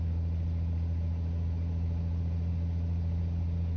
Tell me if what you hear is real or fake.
real